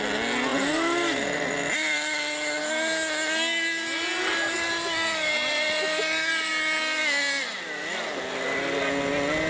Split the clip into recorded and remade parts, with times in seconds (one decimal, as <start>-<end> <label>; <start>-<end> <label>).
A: 0.0-0.5 recorded; 0.5-2.6 remade; 2.6-4.3 recorded; 4.3-6.5 remade; 6.5-7.4 recorded; 7.4-9.1 remade; 9.1-9.5 recorded